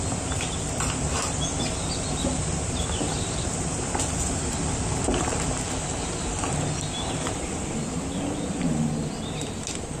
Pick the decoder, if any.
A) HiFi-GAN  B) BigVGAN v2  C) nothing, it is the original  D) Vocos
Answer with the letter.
B